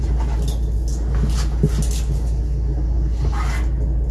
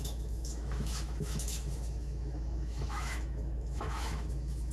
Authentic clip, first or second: first